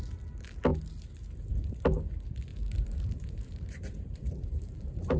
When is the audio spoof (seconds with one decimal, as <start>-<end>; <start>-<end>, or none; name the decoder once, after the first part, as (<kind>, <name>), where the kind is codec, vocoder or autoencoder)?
2.5-5.2 (vocoder, BigVGAN v2)